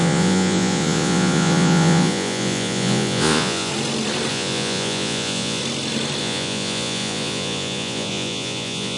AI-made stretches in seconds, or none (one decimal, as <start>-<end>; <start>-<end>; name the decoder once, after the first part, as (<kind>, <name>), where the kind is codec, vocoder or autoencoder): 0.0-3.7 (vocoder, Vocos); 4.3-5.6; 6.2-9.0